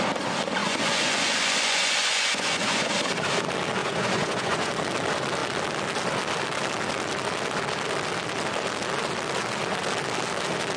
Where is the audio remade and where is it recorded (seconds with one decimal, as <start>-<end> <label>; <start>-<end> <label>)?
0.0-0.6 recorded; 0.6-2.9 remade; 2.9-3.8 recorded; 3.8-4.7 remade; 4.7-10.8 recorded